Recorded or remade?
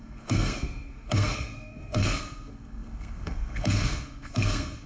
remade